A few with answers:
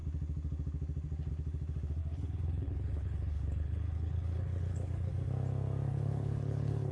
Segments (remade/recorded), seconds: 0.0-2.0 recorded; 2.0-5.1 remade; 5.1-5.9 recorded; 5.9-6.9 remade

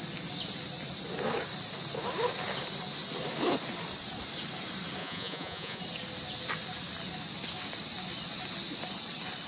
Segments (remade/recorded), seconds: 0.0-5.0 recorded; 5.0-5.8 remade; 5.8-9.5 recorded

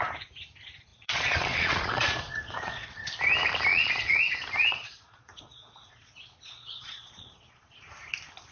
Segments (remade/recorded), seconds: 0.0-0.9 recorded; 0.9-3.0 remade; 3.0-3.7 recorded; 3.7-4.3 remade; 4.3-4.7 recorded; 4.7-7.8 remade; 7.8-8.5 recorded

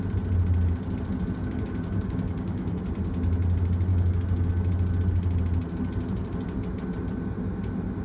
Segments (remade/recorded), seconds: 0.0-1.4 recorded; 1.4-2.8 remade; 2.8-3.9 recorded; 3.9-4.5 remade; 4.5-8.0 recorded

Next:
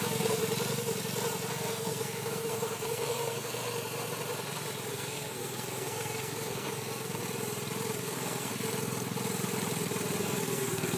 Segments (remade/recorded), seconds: 0.0-0.4 remade; 0.4-1.5 recorded; 1.5-3.6 remade; 3.6-4.9 recorded; 4.9-7.2 remade; 7.2-8.0 recorded; 8.0-8.5 remade; 8.5-10.2 recorded; 10.2-11.0 remade

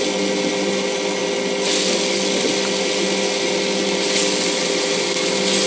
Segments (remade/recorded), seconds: 0.0-5.7 recorded